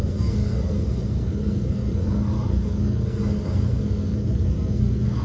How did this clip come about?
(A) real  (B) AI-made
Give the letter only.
B